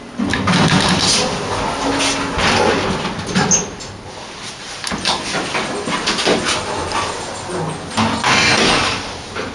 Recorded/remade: recorded